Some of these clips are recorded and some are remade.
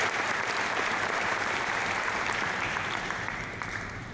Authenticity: remade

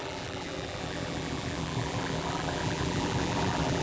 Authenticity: remade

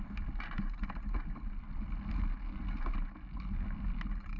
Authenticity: recorded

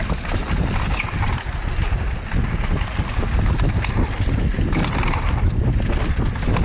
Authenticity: recorded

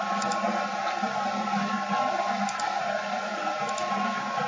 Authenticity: recorded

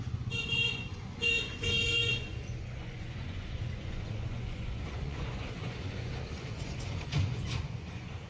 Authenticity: remade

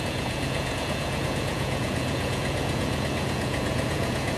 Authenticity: remade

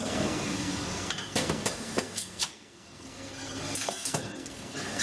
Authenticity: remade